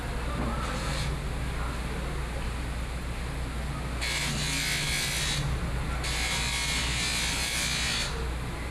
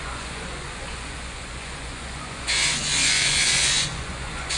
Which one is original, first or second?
first